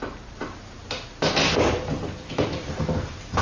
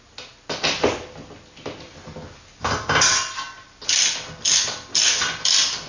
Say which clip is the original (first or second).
second